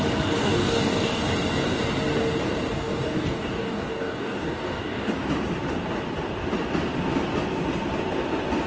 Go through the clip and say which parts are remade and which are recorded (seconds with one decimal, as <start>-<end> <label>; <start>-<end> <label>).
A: 0.0-0.4 recorded; 0.4-1.2 remade; 1.2-2.7 recorded; 2.7-5.1 remade; 5.1-8.7 recorded